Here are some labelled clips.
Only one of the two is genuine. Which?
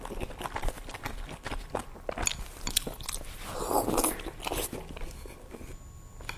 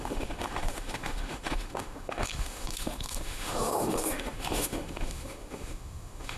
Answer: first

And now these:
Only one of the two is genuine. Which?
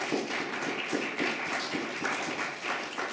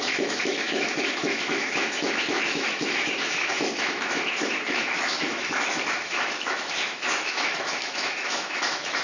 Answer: first